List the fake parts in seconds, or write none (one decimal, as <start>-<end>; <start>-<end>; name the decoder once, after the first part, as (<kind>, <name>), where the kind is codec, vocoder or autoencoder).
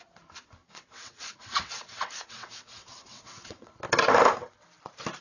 0.6-3.7 (vocoder, WaveNeXt)